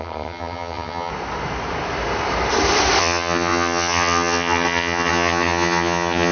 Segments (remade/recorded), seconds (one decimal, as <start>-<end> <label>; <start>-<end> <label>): 0.0-1.1 remade; 1.1-3.0 recorded; 3.0-6.3 remade